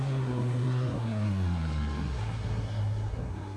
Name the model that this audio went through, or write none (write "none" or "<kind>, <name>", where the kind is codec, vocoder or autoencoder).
codec, SNAC